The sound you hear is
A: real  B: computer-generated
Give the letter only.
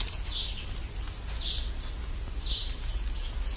A